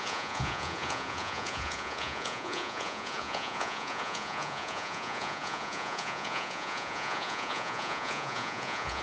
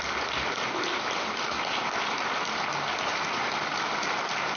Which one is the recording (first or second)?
second